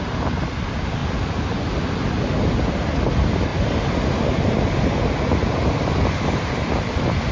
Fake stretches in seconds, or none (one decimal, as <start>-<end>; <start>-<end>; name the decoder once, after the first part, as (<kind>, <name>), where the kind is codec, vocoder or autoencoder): none